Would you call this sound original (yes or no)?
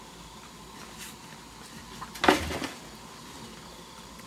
yes